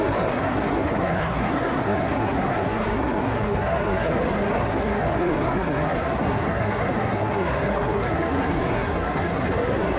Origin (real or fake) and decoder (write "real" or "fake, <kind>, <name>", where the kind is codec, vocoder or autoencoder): fake, codec, SNAC